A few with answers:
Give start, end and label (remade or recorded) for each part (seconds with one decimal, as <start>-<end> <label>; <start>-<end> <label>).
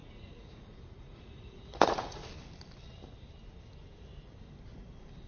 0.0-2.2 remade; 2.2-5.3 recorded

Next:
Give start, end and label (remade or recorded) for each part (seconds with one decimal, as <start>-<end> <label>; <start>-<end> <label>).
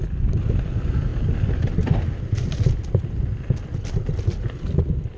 0.0-5.2 recorded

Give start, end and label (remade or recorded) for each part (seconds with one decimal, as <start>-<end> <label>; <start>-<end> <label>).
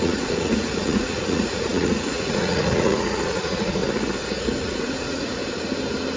0.0-3.8 remade; 3.8-4.6 recorded; 4.6-5.4 remade; 5.4-6.2 recorded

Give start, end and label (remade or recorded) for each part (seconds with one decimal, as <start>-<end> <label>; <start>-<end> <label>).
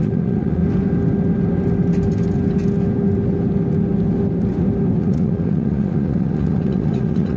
0.0-0.6 remade; 0.6-5.0 recorded; 5.0-7.4 remade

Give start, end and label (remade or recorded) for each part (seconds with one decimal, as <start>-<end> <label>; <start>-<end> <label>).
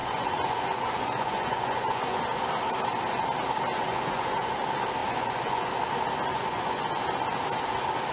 0.0-2.2 remade; 2.2-3.7 recorded; 3.7-4.5 remade; 4.5-5.0 recorded; 5.0-5.7 remade; 5.7-6.3 recorded; 6.3-7.0 remade; 7.0-8.1 recorded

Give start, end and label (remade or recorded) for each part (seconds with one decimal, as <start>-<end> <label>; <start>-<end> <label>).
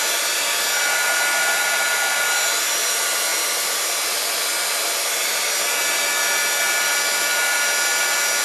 0.0-8.4 recorded